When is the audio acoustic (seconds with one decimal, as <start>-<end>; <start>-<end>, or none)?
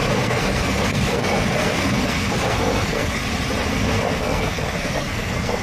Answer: 3.2-3.7